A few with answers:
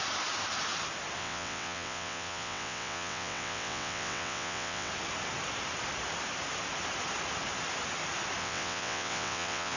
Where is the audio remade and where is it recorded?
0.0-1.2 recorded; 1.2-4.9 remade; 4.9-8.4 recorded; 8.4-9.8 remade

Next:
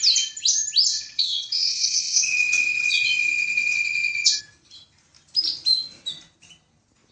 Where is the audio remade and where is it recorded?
0.0-0.9 recorded; 0.9-4.4 remade; 4.4-7.1 recorded

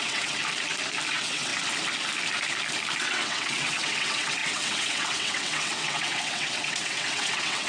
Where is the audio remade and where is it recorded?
0.0-0.4 remade; 0.4-1.1 recorded; 1.1-1.5 remade; 1.5-3.0 recorded; 3.0-7.7 remade

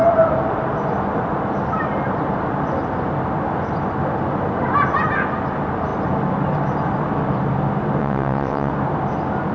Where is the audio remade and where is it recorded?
0.0-8.0 recorded; 8.0-8.7 remade; 8.7-9.5 recorded